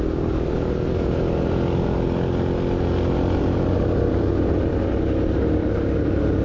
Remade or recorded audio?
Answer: recorded